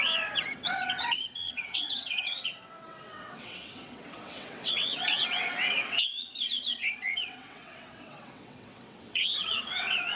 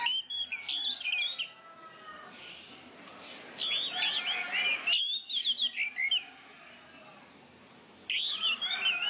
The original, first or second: second